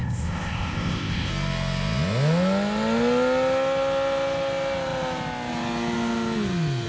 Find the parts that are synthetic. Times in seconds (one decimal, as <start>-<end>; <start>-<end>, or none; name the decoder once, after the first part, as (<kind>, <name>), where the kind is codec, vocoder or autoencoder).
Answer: 0.0-1.3 (codec, ZipCodec)